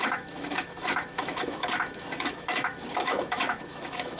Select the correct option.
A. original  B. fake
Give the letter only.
B